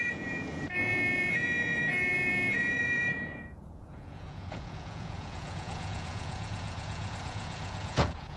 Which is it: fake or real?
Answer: fake